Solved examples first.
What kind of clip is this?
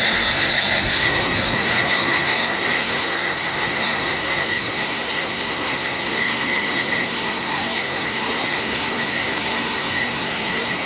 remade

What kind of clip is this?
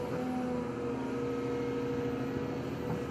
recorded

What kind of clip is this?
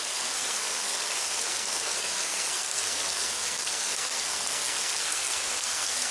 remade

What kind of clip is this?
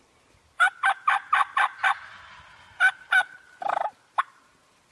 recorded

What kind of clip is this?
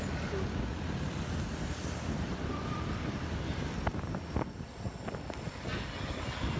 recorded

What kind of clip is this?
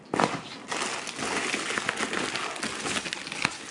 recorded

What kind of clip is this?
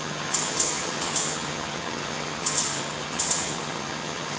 remade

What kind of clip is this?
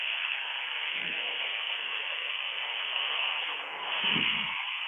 remade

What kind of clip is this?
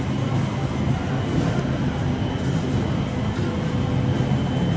recorded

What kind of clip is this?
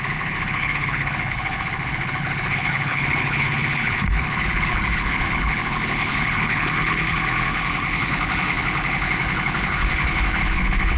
remade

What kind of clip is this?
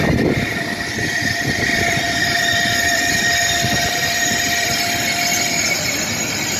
remade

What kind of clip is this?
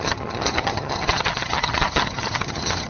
remade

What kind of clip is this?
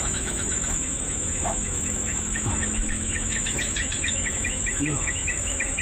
remade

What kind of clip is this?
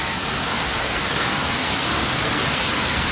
remade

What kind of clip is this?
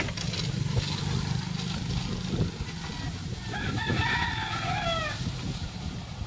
recorded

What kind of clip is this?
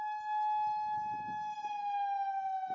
remade